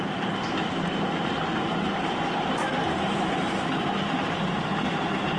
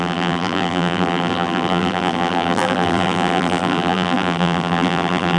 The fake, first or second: second